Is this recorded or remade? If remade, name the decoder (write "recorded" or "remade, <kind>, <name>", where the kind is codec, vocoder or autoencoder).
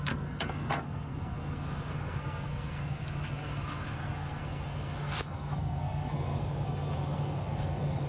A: remade, codec, SNAC